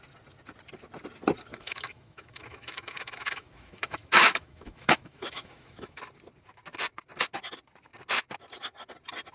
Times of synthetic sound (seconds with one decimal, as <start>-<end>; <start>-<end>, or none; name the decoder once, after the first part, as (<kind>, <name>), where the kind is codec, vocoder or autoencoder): 1.5-6.0 (autoencoder, DAC-VAE)